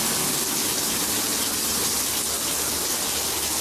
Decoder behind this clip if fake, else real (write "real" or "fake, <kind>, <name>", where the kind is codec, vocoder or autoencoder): real